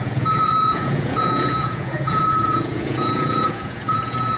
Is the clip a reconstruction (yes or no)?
yes